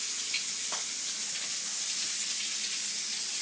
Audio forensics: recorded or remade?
recorded